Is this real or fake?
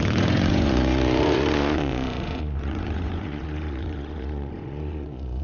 fake